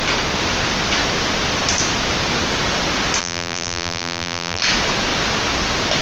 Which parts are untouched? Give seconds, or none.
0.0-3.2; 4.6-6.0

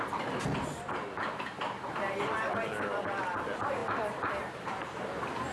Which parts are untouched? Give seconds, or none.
0.0-3.8; 5.1-5.5

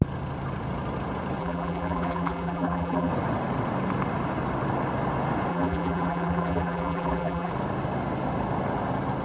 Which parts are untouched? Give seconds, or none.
0.0-1.4; 3.1-5.5; 7.5-9.2